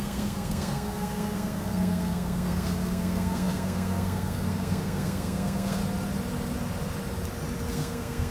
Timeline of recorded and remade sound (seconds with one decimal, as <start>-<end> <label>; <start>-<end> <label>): 0.0-5.8 remade; 5.8-7.7 recorded; 7.7-8.3 remade